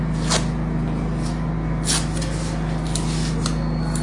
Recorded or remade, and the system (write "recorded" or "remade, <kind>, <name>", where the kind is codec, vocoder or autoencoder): recorded